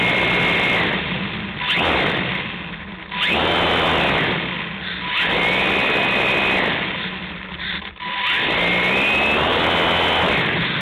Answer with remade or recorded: recorded